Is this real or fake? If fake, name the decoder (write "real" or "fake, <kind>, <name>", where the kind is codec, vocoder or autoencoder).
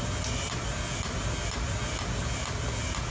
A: real